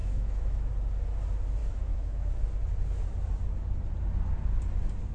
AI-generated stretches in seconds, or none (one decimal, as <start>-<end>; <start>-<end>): 0.0-0.7; 1.6-2.3